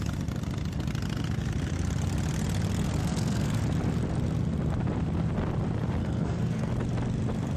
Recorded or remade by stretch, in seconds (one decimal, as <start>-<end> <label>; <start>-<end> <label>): 0.0-3.0 recorded; 3.0-3.6 remade; 3.6-6.0 recorded; 6.0-6.7 remade; 6.7-7.6 recorded